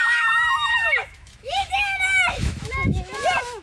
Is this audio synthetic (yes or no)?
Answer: yes